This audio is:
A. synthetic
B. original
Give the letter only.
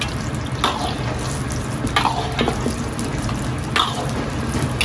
B